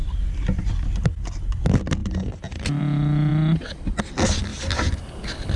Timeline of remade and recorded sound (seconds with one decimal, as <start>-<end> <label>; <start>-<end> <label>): 0.0-4.5 recorded; 4.5-5.1 remade; 5.1-5.6 recorded